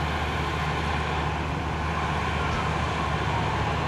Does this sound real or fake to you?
real